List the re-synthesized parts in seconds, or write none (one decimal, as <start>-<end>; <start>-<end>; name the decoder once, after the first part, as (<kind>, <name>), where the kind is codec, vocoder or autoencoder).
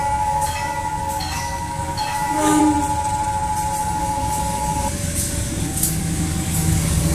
0.0-2.6 (codec, DAC); 3.8-7.1